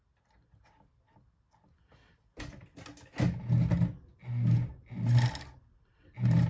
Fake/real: real